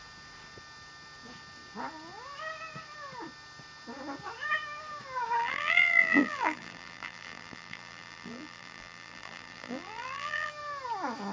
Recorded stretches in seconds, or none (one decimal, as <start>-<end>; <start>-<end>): 0.0-5.4; 10.5-11.3